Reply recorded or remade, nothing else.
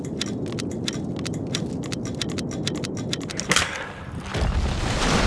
recorded